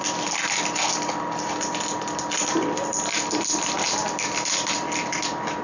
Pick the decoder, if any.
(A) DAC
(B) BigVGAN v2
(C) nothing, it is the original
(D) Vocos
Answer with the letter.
C